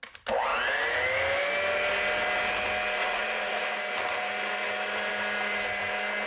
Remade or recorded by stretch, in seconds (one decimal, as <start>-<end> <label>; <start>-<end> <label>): 0.0-3.0 recorded; 3.0-3.8 remade; 3.8-6.3 recorded